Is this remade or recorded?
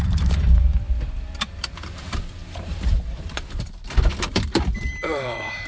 remade